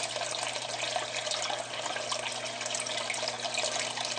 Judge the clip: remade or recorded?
recorded